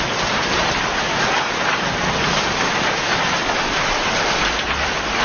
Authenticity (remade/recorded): recorded